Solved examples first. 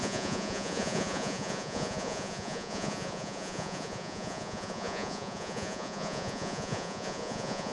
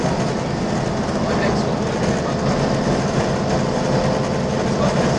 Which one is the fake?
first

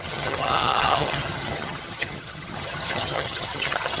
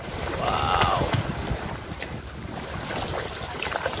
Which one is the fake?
first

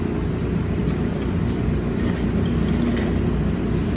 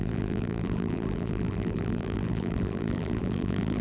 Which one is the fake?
second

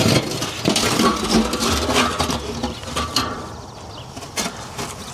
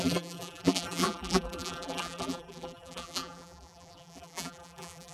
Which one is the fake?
second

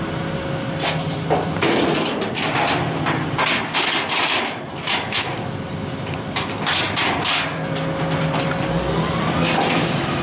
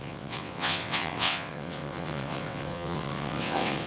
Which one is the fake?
second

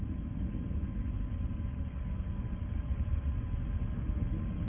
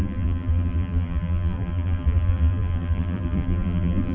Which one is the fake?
second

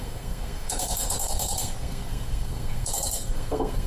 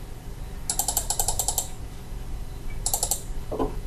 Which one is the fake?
first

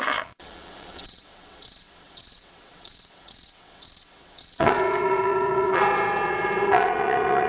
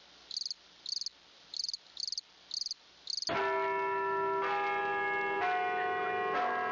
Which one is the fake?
first